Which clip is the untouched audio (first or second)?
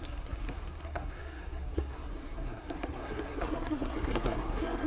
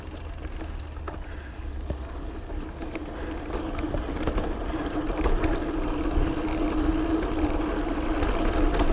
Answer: second